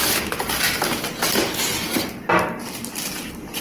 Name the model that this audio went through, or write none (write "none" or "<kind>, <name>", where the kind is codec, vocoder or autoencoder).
none